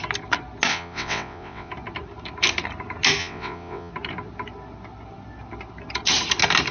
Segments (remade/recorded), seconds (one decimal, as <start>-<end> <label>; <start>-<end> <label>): 0.0-0.7 recorded; 0.7-1.7 remade; 1.7-3.2 recorded; 3.2-3.9 remade; 3.9-6.7 recorded